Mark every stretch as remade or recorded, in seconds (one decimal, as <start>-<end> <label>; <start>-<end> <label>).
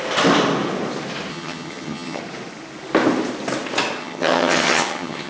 0.0-1.3 recorded; 1.3-2.2 remade; 2.2-4.0 recorded; 4.0-5.3 remade